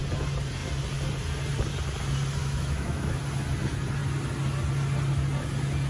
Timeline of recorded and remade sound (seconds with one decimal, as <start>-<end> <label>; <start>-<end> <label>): 0.0-2.4 recorded; 2.4-3.2 remade; 3.2-5.9 recorded